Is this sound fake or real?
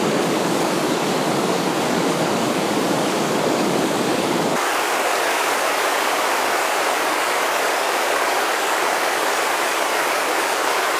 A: fake